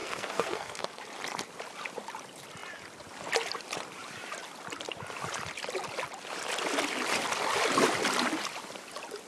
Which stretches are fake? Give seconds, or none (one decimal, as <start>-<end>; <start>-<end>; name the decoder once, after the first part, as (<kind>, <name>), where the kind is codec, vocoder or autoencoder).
0.0-1.0 (codec, SNAC)